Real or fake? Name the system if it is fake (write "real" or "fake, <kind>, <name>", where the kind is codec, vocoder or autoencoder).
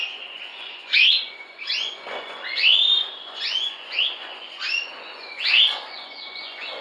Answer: fake, vocoder, Vocos